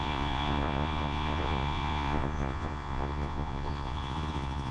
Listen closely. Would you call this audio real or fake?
fake